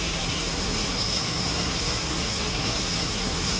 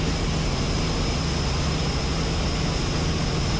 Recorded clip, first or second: second